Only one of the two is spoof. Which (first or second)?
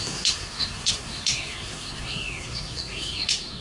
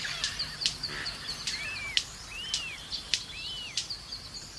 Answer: first